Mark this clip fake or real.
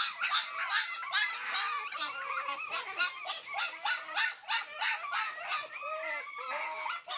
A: real